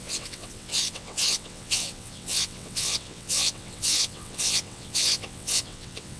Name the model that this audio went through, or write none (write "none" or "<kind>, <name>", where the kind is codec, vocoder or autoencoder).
vocoder, WaveNeXt